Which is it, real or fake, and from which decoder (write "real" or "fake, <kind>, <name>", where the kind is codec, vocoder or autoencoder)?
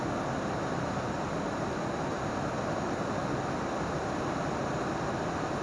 real